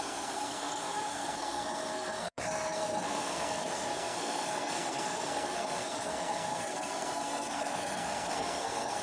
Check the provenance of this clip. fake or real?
fake